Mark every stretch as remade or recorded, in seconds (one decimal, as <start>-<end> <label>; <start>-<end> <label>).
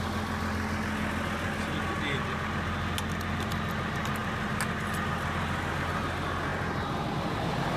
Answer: 0.0-7.8 recorded